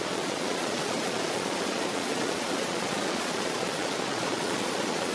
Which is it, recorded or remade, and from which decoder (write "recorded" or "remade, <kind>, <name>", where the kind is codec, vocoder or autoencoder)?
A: remade, vocoder, Vocos